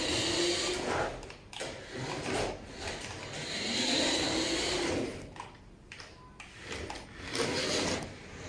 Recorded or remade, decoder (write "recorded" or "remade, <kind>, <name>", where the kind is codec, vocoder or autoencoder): recorded